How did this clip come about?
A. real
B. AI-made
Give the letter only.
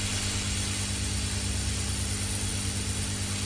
A